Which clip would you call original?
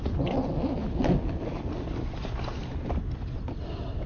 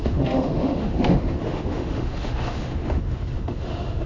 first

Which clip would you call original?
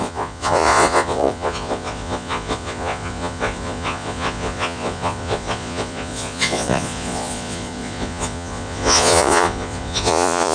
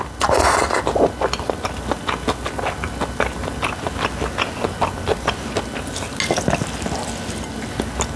second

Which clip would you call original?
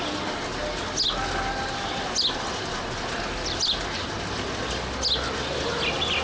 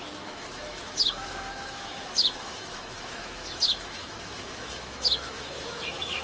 first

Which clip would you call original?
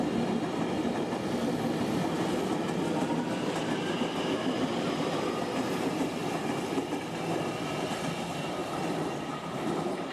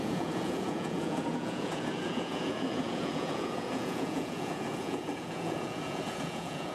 first